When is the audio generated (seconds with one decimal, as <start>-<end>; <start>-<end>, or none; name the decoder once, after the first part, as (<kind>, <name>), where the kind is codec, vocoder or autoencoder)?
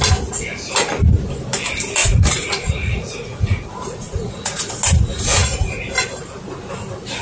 2.0-4.7 (vocoder, Vocos)